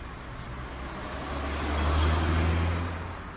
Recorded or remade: recorded